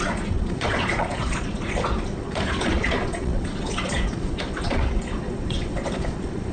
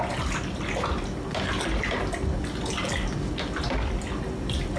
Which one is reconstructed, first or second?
first